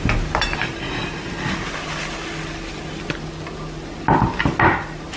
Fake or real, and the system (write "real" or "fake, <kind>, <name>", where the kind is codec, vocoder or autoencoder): real